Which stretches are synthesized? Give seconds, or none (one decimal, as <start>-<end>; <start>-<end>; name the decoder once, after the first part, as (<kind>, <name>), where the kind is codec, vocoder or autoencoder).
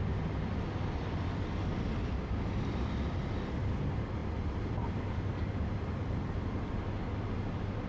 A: none